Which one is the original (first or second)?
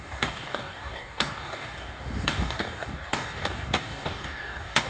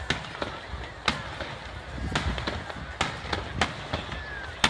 second